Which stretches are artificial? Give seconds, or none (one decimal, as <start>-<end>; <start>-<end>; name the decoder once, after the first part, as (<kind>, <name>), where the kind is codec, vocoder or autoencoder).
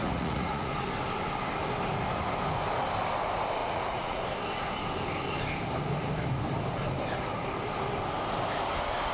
0.0-0.7 (vocoder, Vocos); 3.6-4.2